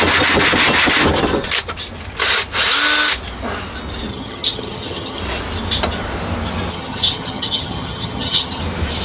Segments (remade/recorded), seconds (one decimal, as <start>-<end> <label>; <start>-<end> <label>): 0.0-4.1 recorded; 4.1-5.2 remade; 5.2-6.7 recorded; 6.7-8.6 remade; 8.6-9.0 recorded